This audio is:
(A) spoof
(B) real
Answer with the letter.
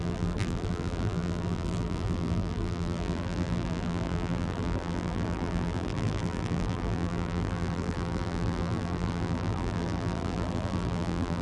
A